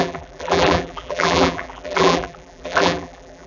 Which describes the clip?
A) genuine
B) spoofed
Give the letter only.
B